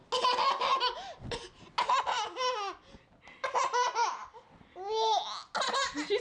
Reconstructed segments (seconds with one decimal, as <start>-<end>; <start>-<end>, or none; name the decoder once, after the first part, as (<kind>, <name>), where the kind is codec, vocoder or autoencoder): none